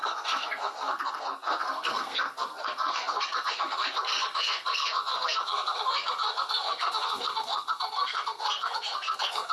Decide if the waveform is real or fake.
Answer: fake